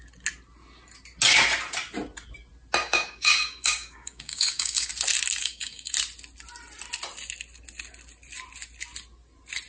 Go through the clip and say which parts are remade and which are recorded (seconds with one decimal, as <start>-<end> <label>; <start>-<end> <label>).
0.0-2.8 recorded; 2.8-4.9 remade; 4.9-5.4 recorded; 5.4-5.9 remade; 5.9-9.7 recorded